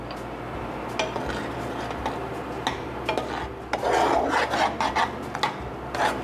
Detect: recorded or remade recorded